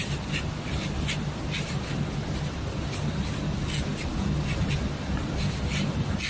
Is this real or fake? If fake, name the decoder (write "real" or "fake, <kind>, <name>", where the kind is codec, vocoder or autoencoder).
real